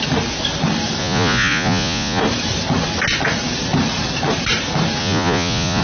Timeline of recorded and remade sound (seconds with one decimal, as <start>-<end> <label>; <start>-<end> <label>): 0.0-1.0 recorded; 1.0-2.2 remade; 2.2-5.0 recorded; 5.0-5.8 remade